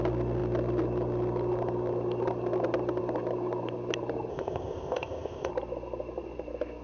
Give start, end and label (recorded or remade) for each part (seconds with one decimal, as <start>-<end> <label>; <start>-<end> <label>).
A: 0.0-4.3 recorded; 4.3-5.5 remade; 5.5-6.8 recorded